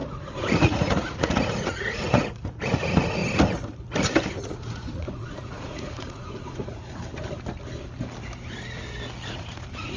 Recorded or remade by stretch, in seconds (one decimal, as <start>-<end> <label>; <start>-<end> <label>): 0.0-3.2 remade; 3.2-4.3 recorded; 4.3-7.0 remade; 7.0-9.4 recorded; 9.4-10.0 remade